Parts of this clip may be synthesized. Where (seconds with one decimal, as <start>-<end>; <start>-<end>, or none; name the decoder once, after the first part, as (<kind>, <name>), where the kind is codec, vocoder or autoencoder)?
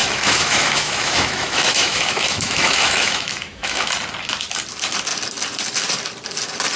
0.0-3.9 (autoencoder, DAC-VAE)